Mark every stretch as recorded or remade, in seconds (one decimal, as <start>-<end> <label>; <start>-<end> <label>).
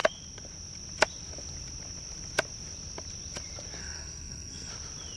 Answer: 0.0-3.8 recorded; 3.8-4.7 remade; 4.7-5.2 recorded